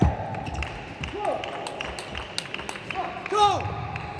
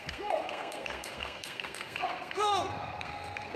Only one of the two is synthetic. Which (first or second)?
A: second